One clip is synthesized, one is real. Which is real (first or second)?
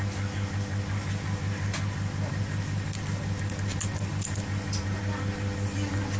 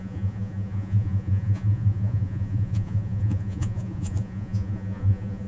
first